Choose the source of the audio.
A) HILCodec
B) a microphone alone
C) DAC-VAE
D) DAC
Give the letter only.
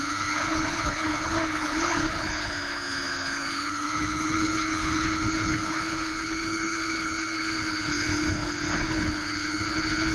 A